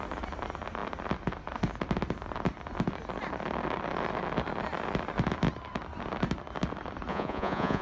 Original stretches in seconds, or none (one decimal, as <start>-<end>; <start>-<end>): 0.0-7.1